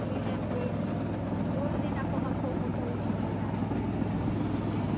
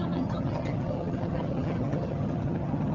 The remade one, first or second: second